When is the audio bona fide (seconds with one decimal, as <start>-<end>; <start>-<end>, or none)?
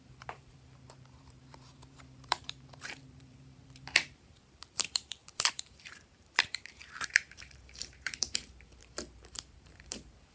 none